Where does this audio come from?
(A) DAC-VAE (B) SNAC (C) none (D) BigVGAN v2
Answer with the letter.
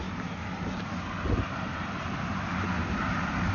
C